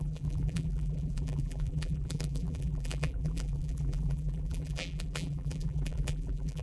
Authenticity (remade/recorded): remade